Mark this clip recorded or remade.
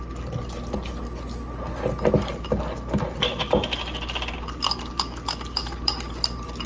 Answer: recorded